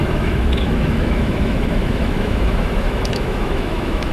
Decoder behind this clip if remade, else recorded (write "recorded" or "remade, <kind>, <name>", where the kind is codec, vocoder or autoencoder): remade, autoencoder, DAC-VAE